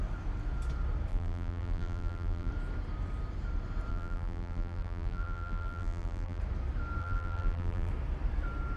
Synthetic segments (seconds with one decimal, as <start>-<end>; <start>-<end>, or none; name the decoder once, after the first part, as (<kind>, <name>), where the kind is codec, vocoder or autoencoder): 1.1-2.5 (vocoder, BigVGAN v2); 3.9-6.4; 7.0-7.9